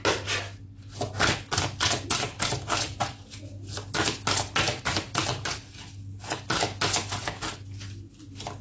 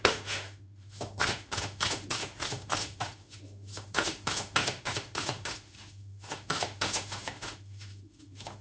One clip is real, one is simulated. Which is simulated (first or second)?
second